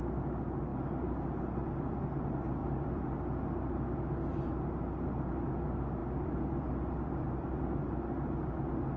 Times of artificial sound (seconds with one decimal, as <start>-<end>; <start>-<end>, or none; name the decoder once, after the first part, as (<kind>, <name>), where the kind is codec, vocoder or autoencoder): 2.6-3.2 (vocoder, BigVGAN v2); 6.0-7.8